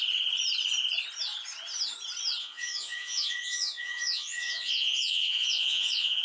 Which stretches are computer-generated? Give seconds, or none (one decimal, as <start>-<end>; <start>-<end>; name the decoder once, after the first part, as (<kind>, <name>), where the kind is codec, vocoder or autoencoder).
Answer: 2.4-6.2 (vocoder, Vocos)